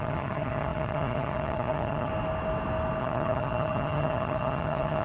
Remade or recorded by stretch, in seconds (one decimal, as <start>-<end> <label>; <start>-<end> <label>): 0.0-2.1 remade; 2.1-3.0 recorded; 3.0-5.0 remade